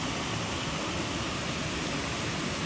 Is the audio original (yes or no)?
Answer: yes